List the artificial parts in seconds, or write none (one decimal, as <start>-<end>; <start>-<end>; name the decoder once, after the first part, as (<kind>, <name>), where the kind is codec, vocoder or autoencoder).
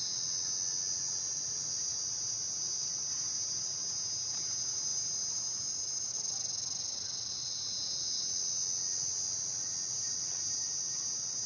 none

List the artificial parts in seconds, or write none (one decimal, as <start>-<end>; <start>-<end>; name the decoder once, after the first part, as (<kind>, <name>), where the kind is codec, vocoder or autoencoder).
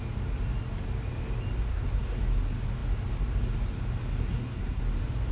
1.7-2.2 (codec, SNAC); 4.2-4.8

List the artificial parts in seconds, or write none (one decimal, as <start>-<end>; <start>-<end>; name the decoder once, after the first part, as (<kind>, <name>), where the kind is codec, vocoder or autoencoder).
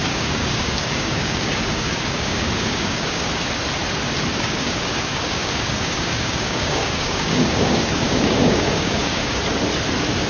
0.0-3.3 (codec, DAC); 4.3-9.4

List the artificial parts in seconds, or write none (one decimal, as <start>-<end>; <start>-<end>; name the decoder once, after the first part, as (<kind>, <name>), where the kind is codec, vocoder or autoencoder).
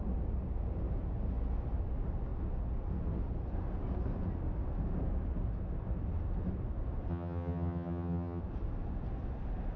7.1-8.4 (vocoder, HiFi-GAN)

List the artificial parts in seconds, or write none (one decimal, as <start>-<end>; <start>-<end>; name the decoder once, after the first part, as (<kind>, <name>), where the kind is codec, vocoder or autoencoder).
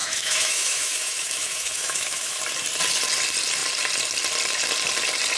0.0-2.4 (autoencoder, DAC-VAE)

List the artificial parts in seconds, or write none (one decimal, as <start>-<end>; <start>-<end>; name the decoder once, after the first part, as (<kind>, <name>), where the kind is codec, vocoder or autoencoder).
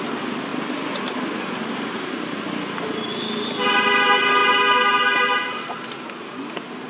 none